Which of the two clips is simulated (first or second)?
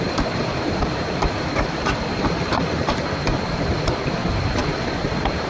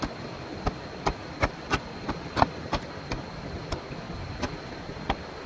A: first